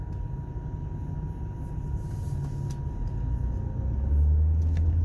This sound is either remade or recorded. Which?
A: recorded